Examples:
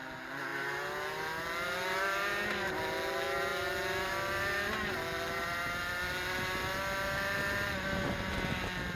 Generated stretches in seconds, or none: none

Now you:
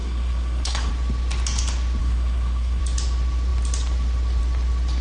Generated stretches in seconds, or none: 0.0-0.9; 2.0-2.8

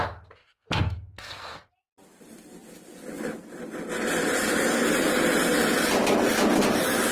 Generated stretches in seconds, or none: 0.4-1.7

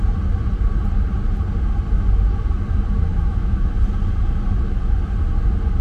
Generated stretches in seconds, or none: 3.1-3.7